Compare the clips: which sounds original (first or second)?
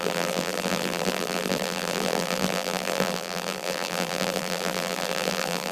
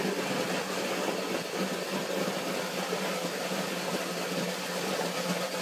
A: second